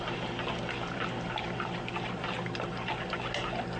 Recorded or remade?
recorded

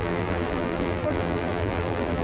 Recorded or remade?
remade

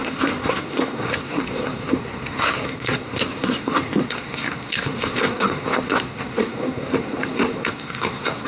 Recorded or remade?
remade